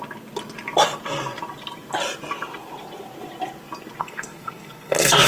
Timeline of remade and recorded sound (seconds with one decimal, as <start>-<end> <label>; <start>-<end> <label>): 0.0-4.0 recorded; 4.0-5.3 remade